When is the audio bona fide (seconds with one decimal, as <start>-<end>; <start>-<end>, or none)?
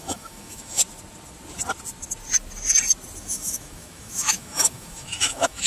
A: 0.8-3.2